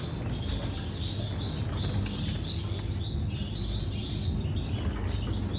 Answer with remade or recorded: recorded